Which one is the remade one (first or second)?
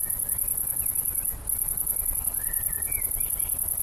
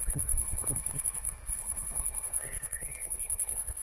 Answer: second